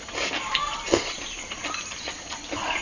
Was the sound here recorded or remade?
recorded